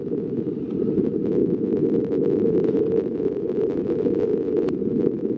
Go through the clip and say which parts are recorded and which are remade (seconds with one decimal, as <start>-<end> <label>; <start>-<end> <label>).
0.0-1.4 remade; 1.4-2.0 recorded; 2.0-4.3 remade; 4.3-5.0 recorded; 5.0-5.4 remade